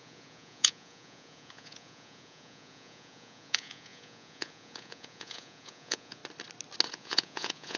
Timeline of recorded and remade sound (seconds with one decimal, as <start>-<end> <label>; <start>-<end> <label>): 0.0-6.2 remade; 6.2-6.9 recorded; 6.9-7.8 remade